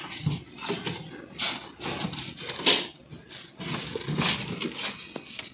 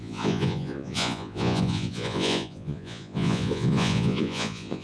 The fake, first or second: second